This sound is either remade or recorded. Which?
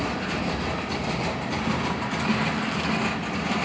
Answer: recorded